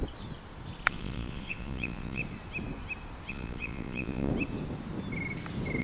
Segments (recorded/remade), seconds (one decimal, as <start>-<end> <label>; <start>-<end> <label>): 0.0-0.9 recorded; 0.9-2.2 remade; 2.2-3.3 recorded; 3.3-4.3 remade; 4.3-5.8 recorded